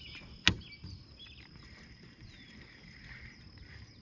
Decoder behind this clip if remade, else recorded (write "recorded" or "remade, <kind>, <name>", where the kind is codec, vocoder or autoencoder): recorded